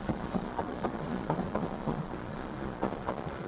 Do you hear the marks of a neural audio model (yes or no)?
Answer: yes